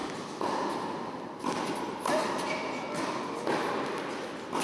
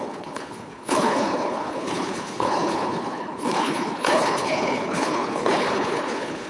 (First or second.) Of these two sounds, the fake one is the second